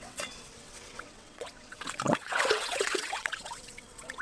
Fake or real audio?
fake